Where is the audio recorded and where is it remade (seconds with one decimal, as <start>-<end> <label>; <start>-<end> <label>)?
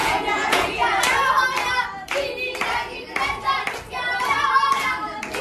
0.0-1.0 remade; 1.0-5.4 recorded